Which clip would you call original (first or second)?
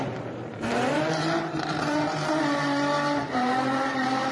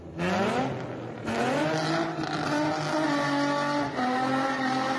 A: second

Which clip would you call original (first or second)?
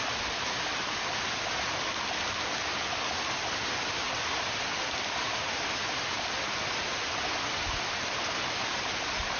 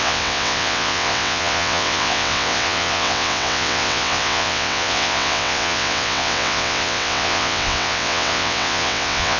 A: first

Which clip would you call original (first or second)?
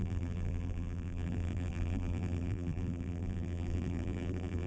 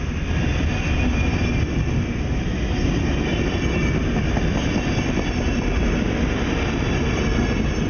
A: second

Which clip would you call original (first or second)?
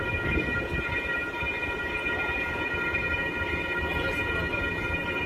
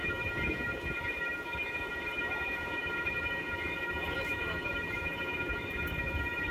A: first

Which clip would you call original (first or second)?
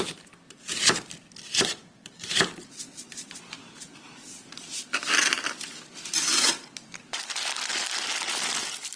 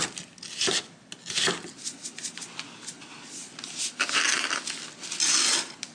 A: second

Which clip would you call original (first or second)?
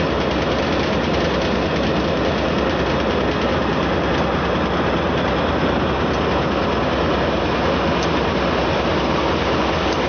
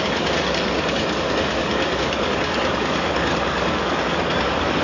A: first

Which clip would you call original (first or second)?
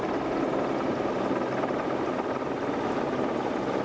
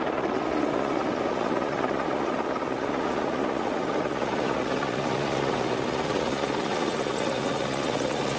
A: first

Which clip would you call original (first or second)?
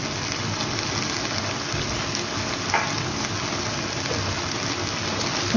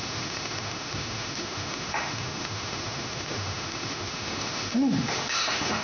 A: first